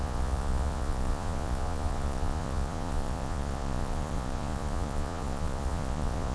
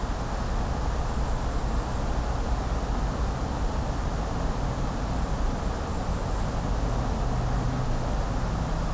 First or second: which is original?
second